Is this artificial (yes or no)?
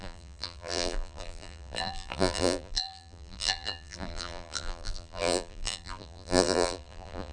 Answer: yes